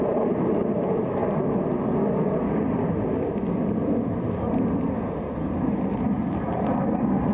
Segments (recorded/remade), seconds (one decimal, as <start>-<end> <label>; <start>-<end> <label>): 0.0-1.2 remade; 1.2-5.6 recorded; 5.6-7.3 remade